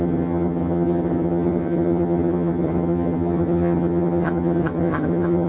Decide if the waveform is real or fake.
fake